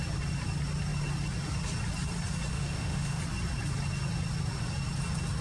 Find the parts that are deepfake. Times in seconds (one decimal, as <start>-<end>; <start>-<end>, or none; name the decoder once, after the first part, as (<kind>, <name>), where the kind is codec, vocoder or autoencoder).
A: 2.5-3.2 (autoencoder, DAC-VAE)